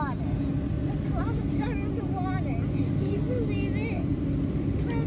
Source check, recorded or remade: recorded